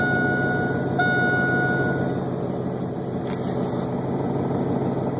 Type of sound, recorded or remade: recorded